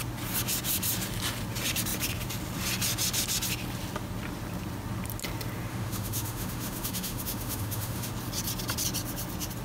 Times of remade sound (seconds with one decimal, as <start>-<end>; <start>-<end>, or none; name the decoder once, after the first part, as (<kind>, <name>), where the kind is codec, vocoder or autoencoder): 5.7-8.1 (autoencoder, DAC-VAE)